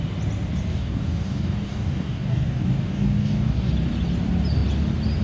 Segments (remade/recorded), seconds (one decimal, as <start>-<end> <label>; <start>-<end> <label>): 0.0-0.7 recorded; 0.7-3.7 remade; 3.7-5.2 recorded